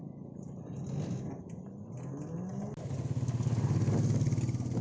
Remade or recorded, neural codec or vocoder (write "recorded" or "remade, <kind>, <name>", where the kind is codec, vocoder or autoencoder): recorded